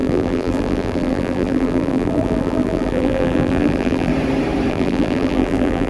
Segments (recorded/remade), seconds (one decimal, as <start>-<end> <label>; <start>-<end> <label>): 0.0-4.1 remade; 4.1-4.7 recorded; 4.7-5.9 remade